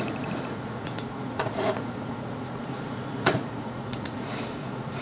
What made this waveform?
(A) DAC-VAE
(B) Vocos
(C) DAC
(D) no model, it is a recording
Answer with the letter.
B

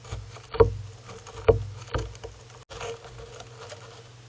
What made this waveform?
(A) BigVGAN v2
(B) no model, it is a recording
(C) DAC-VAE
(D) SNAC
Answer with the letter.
B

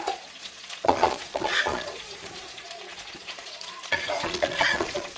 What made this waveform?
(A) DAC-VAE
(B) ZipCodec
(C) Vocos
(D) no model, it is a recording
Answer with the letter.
C